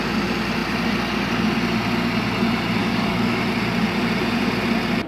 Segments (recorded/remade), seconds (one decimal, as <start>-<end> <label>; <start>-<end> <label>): 0.0-2.8 recorded; 2.8-3.4 remade; 3.4-5.1 recorded